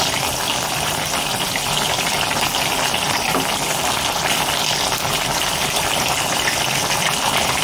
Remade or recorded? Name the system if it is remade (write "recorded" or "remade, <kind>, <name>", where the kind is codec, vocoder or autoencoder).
recorded